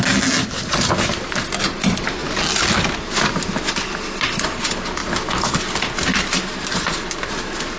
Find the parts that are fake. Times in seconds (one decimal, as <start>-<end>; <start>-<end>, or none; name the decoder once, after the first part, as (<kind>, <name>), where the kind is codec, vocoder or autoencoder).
none